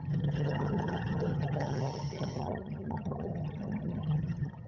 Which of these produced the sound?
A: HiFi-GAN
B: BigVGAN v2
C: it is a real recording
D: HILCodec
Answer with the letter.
A